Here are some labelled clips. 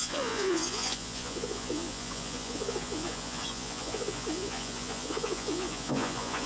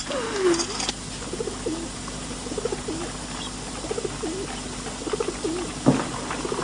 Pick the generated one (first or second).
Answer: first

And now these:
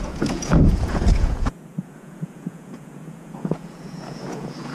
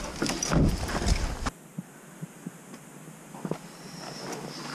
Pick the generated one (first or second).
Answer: first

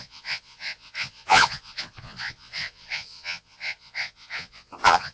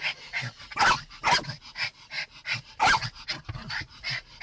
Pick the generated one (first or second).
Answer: first